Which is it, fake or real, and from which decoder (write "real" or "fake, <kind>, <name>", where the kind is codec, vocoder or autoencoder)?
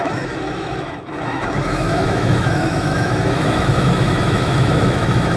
fake, autoencoder, DAC-VAE